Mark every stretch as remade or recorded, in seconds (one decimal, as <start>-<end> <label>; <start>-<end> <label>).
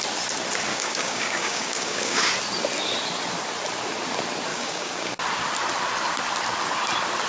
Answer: 0.0-0.7 recorded; 0.7-2.3 remade; 2.3-4.5 recorded; 4.5-5.1 remade; 5.1-7.3 recorded